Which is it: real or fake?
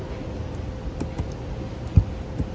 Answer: real